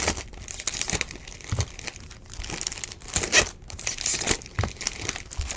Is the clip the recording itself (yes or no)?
no